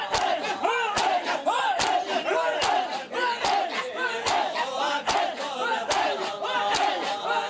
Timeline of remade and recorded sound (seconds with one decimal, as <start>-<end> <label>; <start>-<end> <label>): 0.0-7.5 recorded